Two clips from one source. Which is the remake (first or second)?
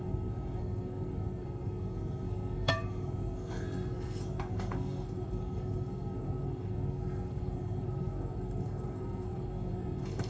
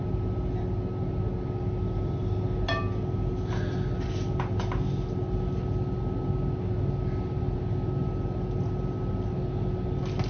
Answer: first